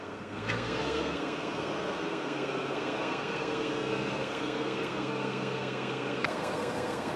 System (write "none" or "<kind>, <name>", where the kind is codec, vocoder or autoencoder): codec, SNAC